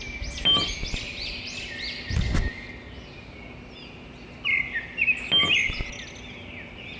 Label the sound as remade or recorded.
recorded